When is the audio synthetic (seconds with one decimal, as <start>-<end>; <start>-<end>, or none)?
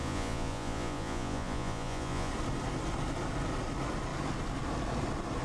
0.0-2.3